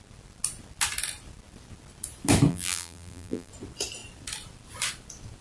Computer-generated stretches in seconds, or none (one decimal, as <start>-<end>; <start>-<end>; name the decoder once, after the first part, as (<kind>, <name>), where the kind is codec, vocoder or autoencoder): 2.5-3.5 (vocoder, BigVGAN v2)